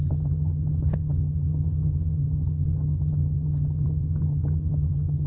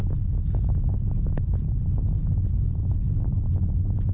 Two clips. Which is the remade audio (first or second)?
first